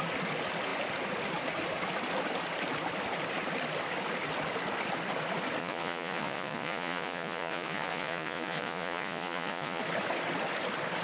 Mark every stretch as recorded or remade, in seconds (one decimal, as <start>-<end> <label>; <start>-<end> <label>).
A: 0.0-5.6 recorded; 5.6-9.8 remade; 9.8-11.0 recorded